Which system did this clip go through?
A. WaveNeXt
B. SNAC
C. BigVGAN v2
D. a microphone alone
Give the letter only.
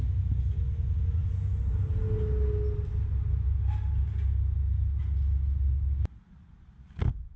D